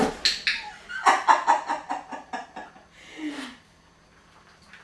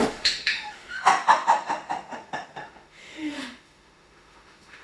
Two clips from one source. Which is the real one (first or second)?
first